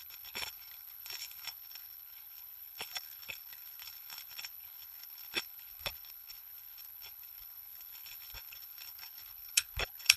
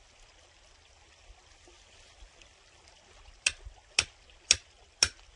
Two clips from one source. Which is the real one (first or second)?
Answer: second